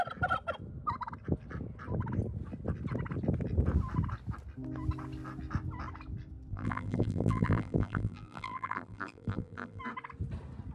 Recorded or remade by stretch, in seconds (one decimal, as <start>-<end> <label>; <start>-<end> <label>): 0.0-6.5 recorded; 6.5-9.8 remade; 9.8-10.7 recorded